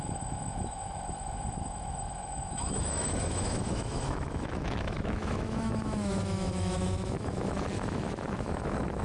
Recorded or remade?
remade